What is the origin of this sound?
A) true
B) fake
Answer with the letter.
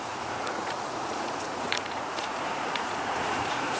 B